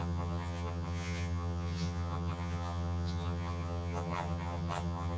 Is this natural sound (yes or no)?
no